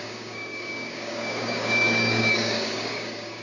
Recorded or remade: remade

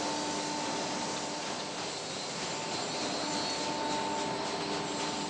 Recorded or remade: recorded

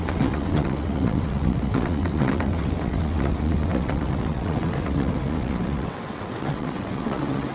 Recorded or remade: remade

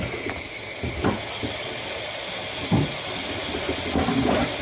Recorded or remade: recorded